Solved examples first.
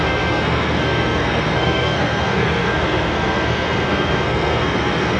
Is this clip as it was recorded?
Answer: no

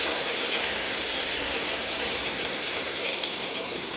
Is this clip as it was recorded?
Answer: no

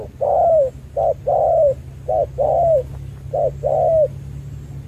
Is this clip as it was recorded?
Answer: yes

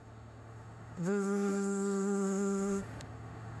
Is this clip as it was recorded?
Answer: no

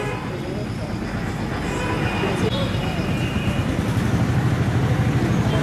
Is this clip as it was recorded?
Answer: yes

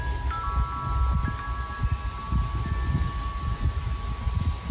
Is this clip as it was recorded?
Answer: yes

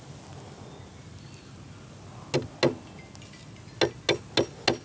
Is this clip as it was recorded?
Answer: yes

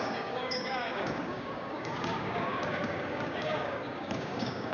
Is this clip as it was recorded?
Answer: no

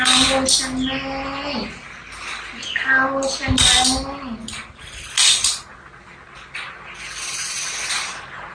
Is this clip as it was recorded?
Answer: yes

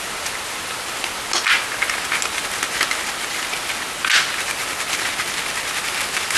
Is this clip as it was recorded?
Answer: yes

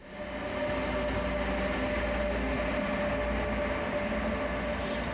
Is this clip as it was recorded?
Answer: yes